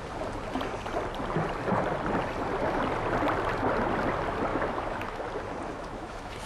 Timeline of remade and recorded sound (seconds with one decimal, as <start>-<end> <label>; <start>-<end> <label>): 0.0-4.5 recorded; 4.5-5.2 remade; 5.2-5.7 recorded; 5.7-6.5 remade